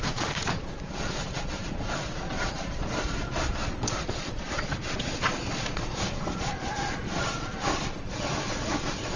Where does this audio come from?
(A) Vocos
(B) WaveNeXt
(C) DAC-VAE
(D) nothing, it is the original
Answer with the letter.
A